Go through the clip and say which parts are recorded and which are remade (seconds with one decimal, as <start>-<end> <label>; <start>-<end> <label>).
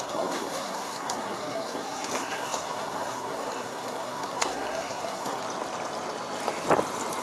0.0-5.4 remade; 5.4-7.2 recorded